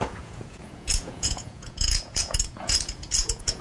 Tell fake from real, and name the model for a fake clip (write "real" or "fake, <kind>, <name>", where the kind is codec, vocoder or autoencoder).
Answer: fake, vocoder, Vocos